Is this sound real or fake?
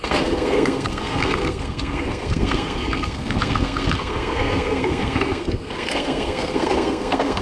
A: fake